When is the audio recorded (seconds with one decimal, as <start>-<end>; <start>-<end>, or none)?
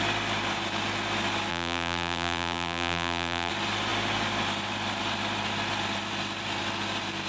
0.0-1.5; 3.5-7.3